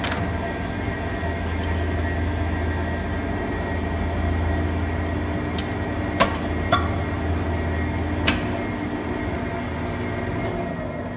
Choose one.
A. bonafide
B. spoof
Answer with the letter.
A